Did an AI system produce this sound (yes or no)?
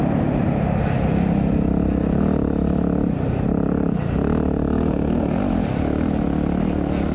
no